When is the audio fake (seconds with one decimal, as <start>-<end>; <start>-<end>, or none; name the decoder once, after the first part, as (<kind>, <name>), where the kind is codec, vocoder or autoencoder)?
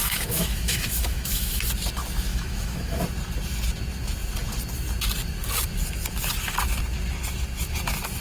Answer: 0.0-1.6 (autoencoder, DAC-VAE); 2.3-3.0